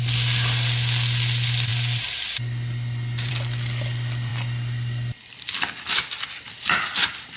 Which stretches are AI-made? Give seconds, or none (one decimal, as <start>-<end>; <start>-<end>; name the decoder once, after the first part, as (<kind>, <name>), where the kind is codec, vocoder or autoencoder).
none